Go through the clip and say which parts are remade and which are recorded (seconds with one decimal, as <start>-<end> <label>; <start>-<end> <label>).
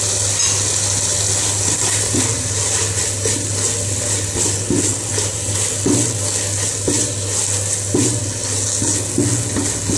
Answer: 0.0-10.0 recorded